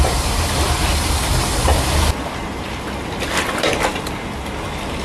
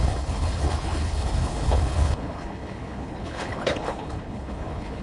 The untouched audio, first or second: first